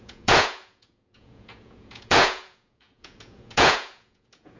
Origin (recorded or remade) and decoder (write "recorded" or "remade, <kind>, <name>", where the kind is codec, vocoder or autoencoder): remade, vocoder, Vocos